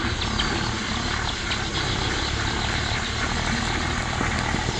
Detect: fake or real real